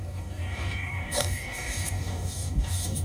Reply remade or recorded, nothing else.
remade